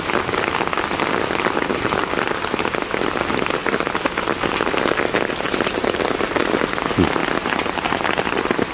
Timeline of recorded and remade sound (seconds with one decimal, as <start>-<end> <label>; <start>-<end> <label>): 0.0-8.7 recorded